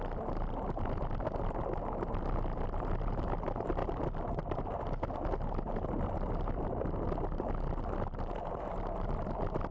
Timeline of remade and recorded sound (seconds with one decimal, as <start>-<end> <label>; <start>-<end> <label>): 0.0-9.7 recorded